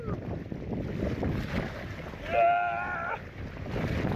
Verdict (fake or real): real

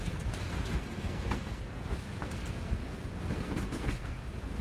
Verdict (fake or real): fake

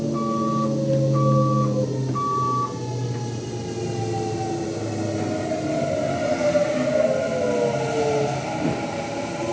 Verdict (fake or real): real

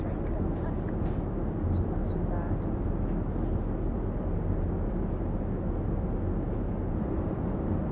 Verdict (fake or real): real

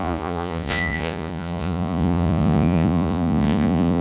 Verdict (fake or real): fake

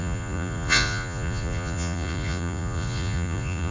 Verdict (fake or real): fake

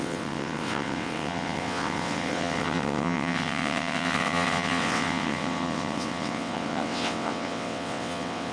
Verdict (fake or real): fake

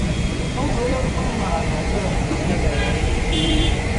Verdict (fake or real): fake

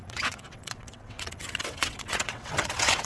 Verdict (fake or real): fake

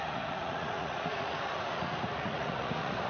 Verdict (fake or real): fake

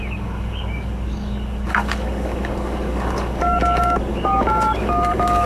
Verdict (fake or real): fake